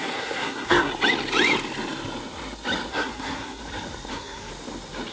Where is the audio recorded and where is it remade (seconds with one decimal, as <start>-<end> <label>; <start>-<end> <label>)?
0.0-0.9 remade; 0.9-2.9 recorded; 2.9-3.6 remade; 3.6-4.1 recorded; 4.1-4.5 remade; 4.5-5.1 recorded